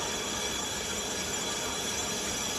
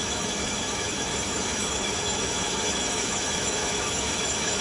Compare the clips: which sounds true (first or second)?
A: first